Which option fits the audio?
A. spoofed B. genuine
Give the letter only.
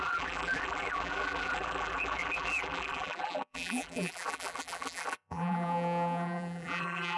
A